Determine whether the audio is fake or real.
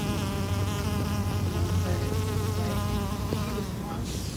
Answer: real